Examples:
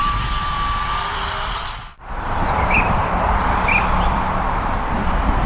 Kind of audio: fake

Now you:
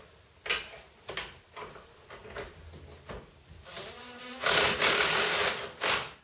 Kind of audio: real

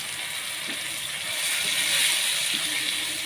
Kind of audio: real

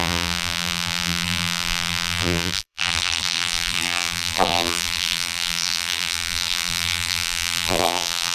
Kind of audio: fake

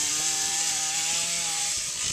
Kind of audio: fake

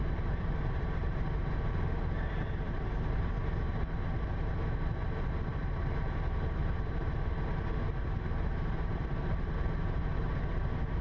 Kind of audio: fake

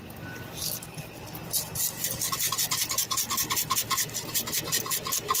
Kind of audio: real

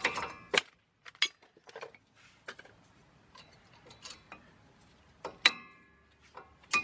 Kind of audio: real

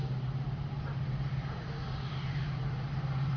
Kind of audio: fake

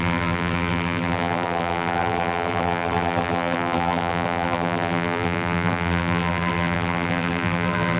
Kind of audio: fake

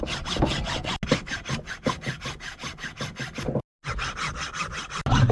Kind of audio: real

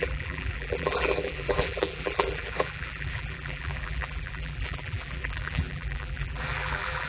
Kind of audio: fake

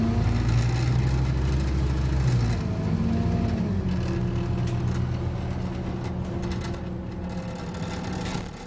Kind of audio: real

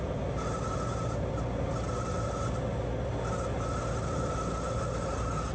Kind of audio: real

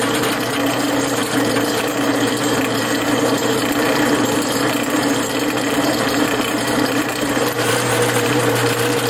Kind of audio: fake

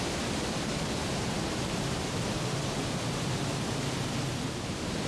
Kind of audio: fake